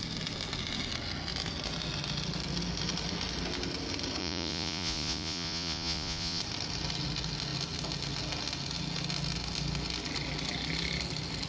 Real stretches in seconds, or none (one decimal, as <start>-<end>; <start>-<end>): 0.0-4.2; 6.4-11.5